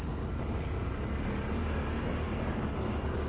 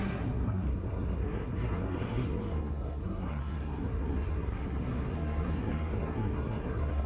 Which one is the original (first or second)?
first